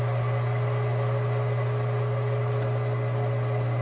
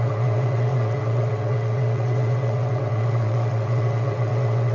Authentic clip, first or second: first